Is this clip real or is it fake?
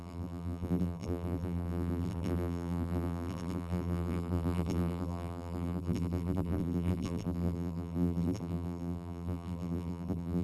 fake